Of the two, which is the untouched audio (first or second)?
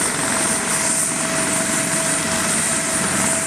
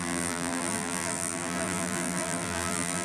first